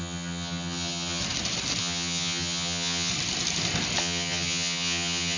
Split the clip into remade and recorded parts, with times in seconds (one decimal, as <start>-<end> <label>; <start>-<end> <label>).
0.0-1.2 remade; 1.2-1.8 recorded; 1.8-3.1 remade; 3.1-4.0 recorded; 4.0-5.4 remade